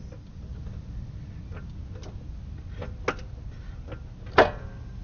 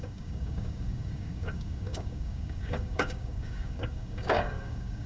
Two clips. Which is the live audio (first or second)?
first